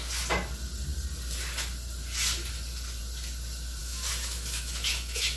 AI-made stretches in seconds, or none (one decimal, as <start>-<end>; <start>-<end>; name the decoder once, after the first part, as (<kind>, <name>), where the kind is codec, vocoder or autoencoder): 3.8-5.4 (autoencoder, DAC-VAE)